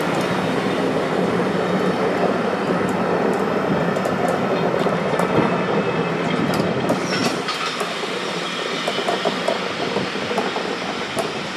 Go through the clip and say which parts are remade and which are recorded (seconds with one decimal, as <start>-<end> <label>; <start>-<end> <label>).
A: 0.0-7.2 recorded; 7.2-8.4 remade; 8.4-11.6 recorded